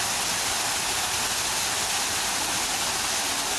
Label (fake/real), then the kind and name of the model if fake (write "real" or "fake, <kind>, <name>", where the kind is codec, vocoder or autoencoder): real